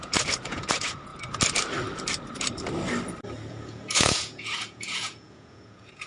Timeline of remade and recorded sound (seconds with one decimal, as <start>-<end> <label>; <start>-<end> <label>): 0.0-1.1 remade; 1.1-3.5 recorded; 3.5-6.1 remade